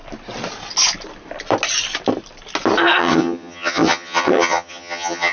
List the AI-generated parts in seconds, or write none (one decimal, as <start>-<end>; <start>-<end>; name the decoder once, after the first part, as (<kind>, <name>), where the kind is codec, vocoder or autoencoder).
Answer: 3.0-5.3 (vocoder, HiFi-GAN)